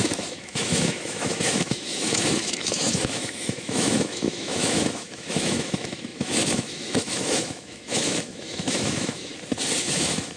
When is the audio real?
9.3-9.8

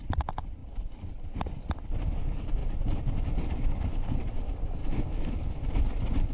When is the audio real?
0.0-0.6; 1.9-6.3

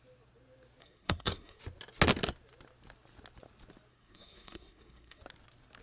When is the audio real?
0.0-0.8; 1.6-3.9; 5.2-5.8

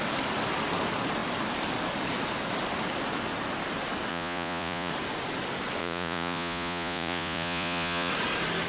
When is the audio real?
0.0-4.1; 4.9-5.8; 8.1-8.7

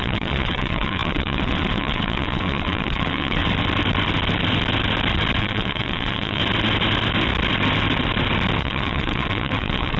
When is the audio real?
3.4-5.4; 6.4-8.6

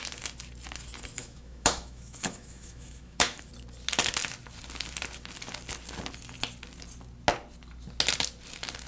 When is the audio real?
0.0-1.2; 3.5-8.9

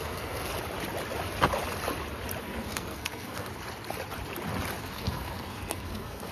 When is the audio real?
0.5-2.4; 3.5-4.8

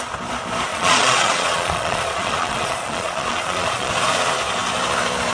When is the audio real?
0.0-0.7; 3.9-5.3